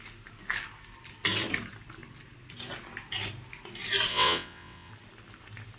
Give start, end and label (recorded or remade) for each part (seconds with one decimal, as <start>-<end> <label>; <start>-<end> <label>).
0.0-4.1 recorded; 4.1-4.9 remade; 4.9-5.8 recorded